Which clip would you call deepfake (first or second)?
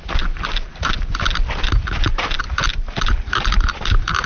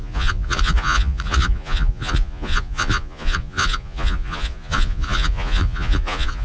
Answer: second